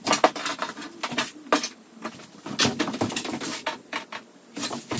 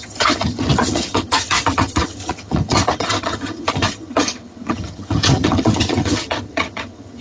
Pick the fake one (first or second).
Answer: second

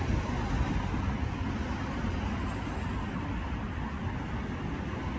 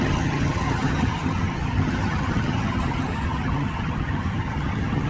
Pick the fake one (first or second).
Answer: second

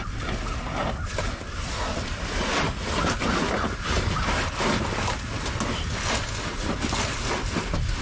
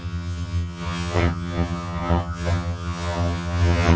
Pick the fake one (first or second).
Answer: second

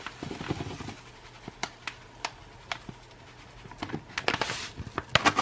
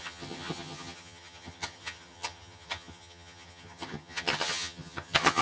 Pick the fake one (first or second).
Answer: second